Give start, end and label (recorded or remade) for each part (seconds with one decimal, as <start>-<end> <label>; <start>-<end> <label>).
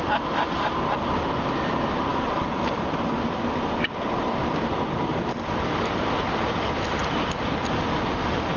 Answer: 0.0-2.1 recorded; 2.1-6.1 remade; 6.1-7.0 recorded; 7.0-7.7 remade; 7.7-8.6 recorded